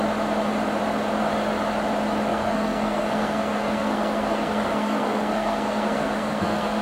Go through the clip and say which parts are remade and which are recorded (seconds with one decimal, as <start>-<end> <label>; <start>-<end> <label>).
0.0-2.3 recorded; 2.3-6.8 remade